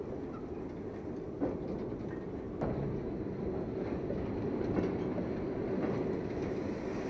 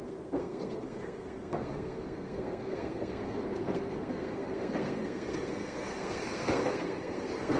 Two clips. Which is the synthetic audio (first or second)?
second